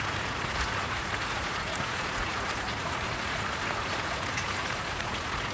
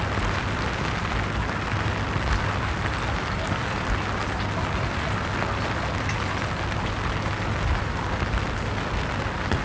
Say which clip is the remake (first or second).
first